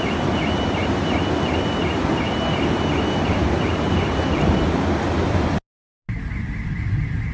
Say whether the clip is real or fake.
real